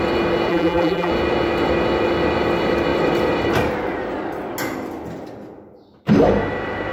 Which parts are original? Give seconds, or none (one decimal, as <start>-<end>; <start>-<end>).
0.0-0.5; 1.1-6.9